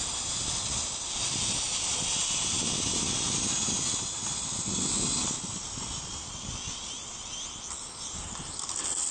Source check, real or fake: real